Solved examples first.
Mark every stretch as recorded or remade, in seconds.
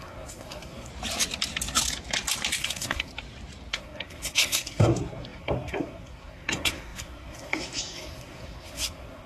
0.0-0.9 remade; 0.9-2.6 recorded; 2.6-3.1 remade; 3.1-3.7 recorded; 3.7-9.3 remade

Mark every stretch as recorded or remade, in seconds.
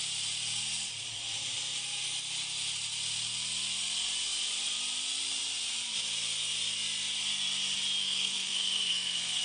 0.0-8.0 recorded; 8.0-9.4 remade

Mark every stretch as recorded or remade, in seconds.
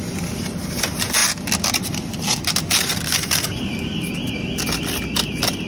0.0-5.7 recorded